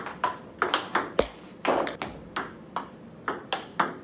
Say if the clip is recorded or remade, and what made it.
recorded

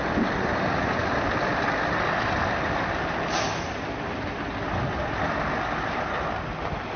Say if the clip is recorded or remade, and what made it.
recorded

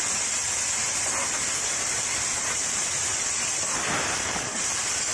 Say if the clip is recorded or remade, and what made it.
recorded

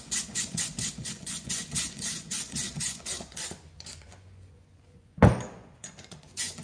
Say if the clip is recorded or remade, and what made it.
remade, vocoder, Vocos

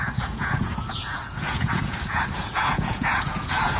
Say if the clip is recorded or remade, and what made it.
remade, vocoder, Vocos